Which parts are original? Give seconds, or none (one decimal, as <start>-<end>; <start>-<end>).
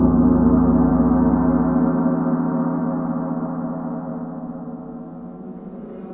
0.0-6.1